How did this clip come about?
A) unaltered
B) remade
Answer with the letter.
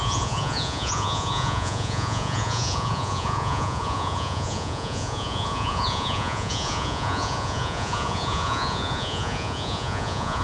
B